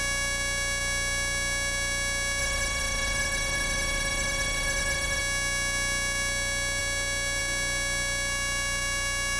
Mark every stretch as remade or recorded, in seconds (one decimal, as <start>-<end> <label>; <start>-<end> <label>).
0.0-2.4 recorded; 2.4-5.2 remade; 5.2-9.4 recorded